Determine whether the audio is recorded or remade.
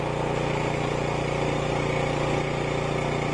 recorded